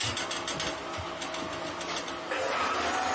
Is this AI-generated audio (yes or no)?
no